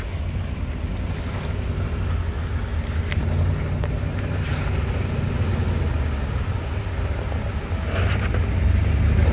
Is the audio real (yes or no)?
yes